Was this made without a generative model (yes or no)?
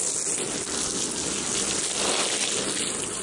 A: yes